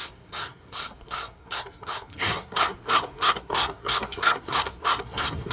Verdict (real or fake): fake